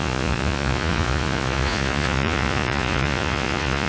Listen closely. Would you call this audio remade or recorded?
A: remade